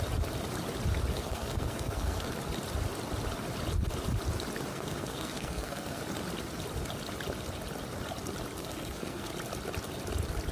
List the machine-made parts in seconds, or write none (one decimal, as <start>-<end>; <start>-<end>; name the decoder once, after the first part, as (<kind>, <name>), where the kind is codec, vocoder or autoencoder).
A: 1.1-2.3 (codec, SNAC); 4.7-6.0; 8.6-9.3